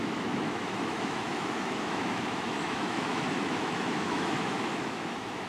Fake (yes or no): yes